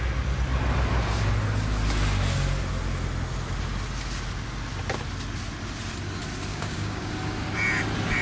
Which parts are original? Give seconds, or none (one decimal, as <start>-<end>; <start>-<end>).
0.0-6.5; 7.1-8.2

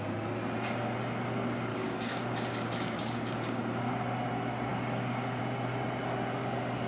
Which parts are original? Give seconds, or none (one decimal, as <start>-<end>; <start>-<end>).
0.0-1.7; 3.9-4.7; 5.4-6.9

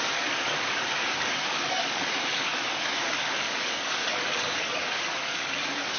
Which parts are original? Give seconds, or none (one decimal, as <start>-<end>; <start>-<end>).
none

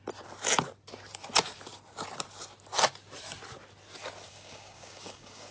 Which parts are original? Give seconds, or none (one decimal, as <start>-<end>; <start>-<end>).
0.0-4.3

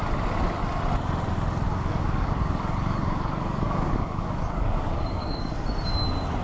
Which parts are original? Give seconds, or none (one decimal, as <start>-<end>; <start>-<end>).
0.0-1.7; 5.5-6.4

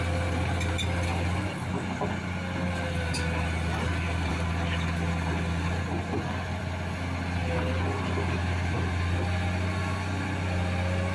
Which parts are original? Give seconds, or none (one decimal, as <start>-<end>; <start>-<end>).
0.0-11.1